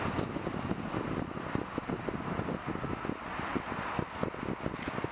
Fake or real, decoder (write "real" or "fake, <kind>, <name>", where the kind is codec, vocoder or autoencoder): real